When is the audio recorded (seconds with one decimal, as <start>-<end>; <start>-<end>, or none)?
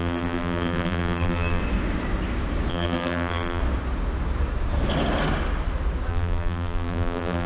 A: 1.6-2.7; 3.6-6.1